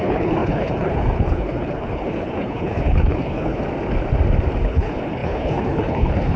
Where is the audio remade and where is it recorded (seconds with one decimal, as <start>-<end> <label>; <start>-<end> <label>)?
0.0-3.6 remade; 3.6-4.6 recorded; 4.6-6.4 remade